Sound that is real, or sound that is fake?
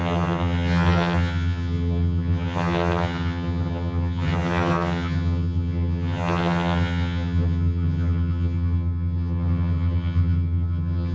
fake